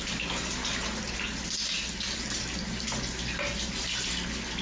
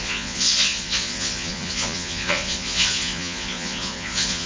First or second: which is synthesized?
second